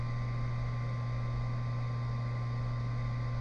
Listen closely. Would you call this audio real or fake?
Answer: real